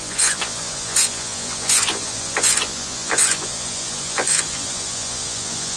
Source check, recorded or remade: remade